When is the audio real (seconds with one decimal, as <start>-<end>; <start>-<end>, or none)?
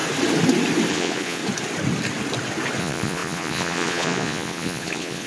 0.0-0.9; 1.4-2.8